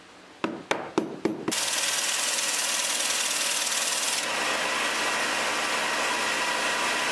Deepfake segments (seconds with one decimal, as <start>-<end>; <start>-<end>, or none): none